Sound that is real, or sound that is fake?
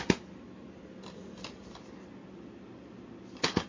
real